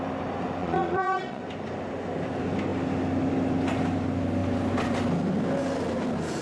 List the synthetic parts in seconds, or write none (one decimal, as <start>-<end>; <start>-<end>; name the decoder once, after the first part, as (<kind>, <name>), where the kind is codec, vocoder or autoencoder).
0.6-1.4 (vocoder, Vocos)